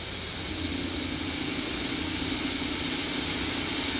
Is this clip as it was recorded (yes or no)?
yes